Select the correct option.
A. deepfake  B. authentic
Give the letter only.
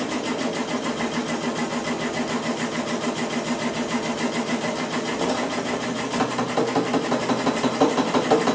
B